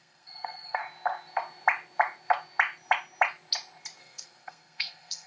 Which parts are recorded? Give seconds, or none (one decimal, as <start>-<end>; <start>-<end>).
0.8-4.0